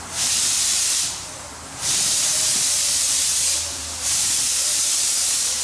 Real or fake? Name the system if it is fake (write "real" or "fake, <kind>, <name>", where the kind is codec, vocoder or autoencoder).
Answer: fake, vocoder, BigVGAN v2